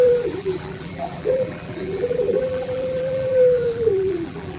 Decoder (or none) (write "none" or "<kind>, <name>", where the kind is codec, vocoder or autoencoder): vocoder, BigVGAN v2